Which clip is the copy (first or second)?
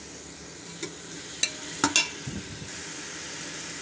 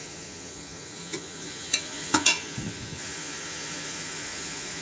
second